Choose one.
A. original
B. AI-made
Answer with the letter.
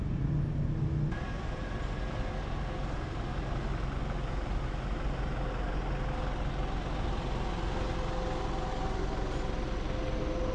A